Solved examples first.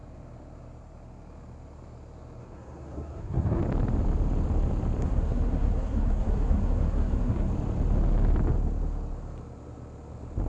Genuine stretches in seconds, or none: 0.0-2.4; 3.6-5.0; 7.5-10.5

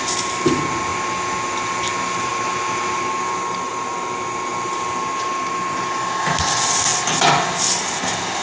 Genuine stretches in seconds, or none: 0.0-8.4